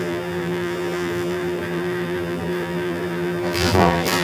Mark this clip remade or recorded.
remade